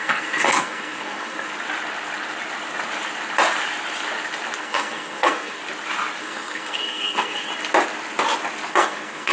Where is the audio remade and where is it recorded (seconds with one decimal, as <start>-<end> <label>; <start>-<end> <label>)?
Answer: 0.0-1.5 remade; 1.5-4.6 recorded; 4.6-5.6 remade; 5.6-6.2 recorded; 6.2-7.5 remade; 7.5-8.7 recorded; 8.7-9.3 remade